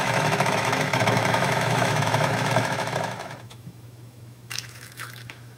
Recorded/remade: remade